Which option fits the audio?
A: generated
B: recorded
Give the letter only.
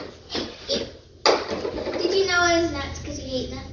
B